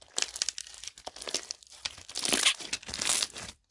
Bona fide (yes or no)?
no